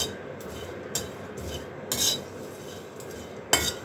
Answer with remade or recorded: recorded